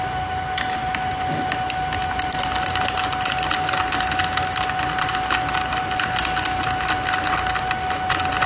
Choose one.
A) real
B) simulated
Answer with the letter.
A